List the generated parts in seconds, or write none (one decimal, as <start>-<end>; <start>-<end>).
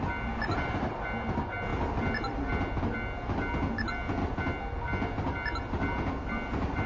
none